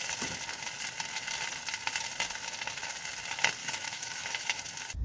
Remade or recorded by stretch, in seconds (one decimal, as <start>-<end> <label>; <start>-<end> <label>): 0.0-3.6 recorded; 3.6-4.6 remade; 4.6-5.0 recorded